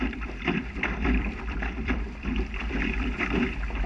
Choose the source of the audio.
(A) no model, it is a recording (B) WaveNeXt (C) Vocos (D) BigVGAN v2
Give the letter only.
D